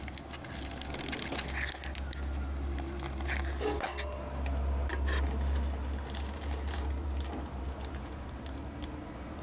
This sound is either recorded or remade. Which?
recorded